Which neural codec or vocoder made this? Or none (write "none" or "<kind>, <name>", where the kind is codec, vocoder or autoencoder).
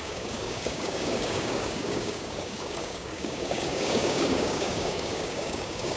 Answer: codec, DAC